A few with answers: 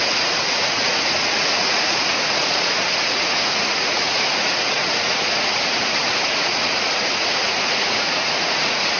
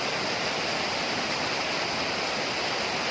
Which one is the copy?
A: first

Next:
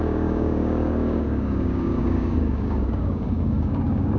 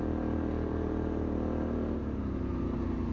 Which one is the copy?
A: first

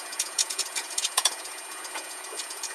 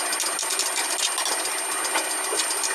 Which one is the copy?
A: first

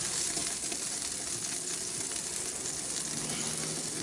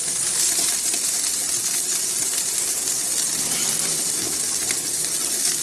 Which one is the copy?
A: second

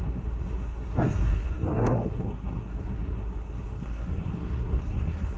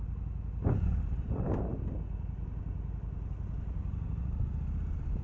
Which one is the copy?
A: first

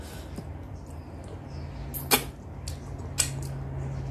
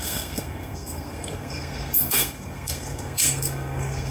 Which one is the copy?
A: second